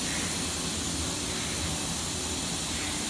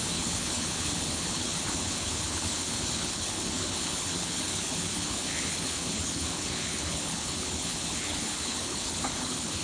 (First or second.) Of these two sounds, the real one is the first